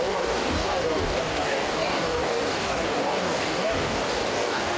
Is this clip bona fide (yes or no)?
no